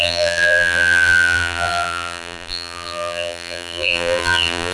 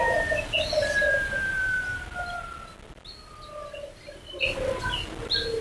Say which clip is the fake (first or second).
first